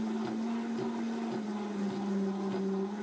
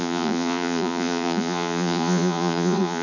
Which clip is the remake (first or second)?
second